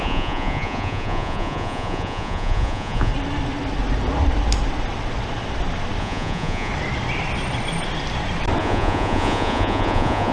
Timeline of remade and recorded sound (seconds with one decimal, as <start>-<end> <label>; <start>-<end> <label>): 0.0-3.1 remade; 3.1-6.0 recorded; 6.0-6.7 remade; 6.7-8.6 recorded; 8.6-10.3 remade